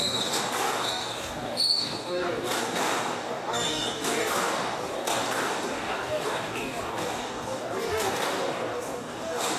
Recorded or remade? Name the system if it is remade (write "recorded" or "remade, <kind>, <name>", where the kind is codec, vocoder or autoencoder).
remade, codec, DAC